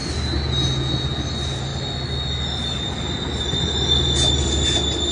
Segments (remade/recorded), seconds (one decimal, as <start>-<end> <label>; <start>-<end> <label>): 0.0-5.1 recorded